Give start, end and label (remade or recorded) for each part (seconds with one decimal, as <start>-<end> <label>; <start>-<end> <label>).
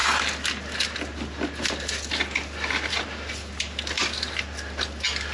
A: 0.0-5.3 recorded